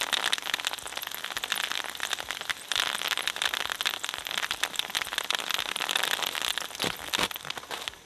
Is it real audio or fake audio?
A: real